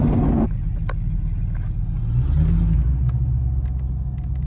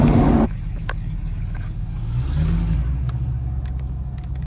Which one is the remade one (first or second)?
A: second